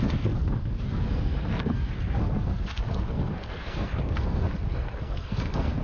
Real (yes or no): no